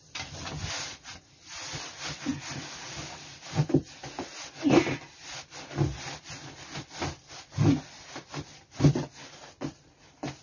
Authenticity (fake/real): real